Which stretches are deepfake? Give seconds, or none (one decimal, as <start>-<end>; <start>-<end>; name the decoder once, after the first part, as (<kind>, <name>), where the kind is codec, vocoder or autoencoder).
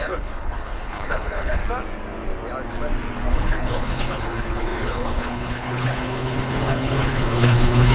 0.0-1.6 (codec, HILCodec); 3.3-7.9